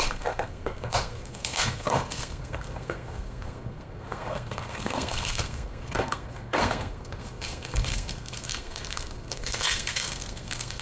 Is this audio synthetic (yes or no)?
yes